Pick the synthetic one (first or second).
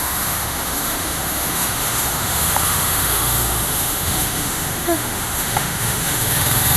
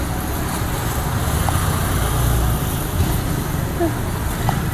first